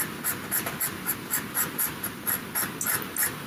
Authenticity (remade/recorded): recorded